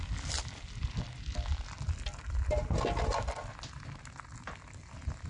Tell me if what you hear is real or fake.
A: real